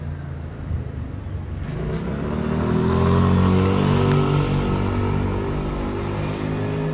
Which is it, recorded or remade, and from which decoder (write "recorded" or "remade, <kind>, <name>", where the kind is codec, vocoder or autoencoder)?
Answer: recorded